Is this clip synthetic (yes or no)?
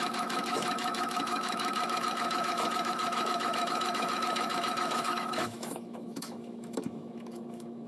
yes